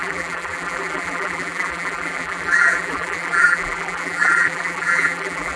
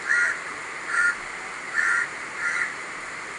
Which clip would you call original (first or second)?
second